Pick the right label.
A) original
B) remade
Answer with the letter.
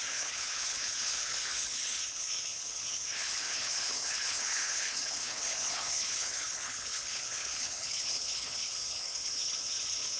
B